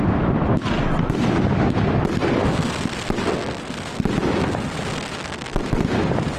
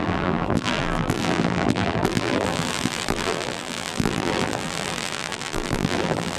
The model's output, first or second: second